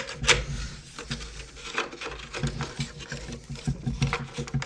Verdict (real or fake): real